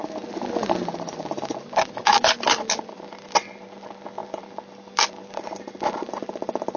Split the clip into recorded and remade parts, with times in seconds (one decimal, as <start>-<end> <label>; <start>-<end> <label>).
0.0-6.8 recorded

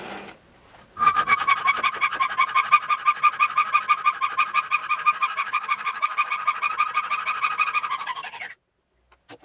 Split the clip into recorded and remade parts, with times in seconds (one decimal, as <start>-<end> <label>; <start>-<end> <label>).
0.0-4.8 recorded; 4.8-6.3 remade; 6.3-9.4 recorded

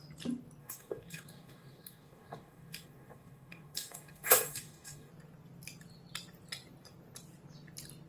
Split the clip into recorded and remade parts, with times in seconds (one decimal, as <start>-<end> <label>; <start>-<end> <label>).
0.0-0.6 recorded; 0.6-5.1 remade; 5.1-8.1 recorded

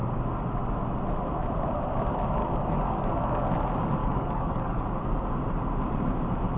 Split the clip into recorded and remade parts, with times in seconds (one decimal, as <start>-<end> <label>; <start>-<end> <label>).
0.0-2.4 recorded; 2.4-3.5 remade; 3.5-4.0 recorded; 4.0-4.8 remade; 4.8-6.6 recorded

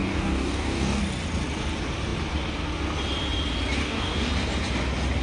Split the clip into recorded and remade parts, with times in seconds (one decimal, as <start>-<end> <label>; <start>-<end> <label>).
0.0-1.0 remade; 1.0-3.8 recorded; 3.8-4.3 remade; 4.3-5.2 recorded

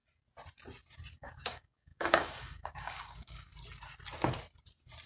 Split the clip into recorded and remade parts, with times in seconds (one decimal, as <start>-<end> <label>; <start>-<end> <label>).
0.0-1.1 recorded; 1.1-3.5 remade; 3.5-5.1 recorded

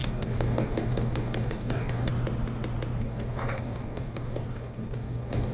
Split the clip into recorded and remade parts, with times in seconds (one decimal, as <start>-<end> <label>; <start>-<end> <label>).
0.0-2.1 remade; 2.1-3.0 recorded; 3.0-5.5 remade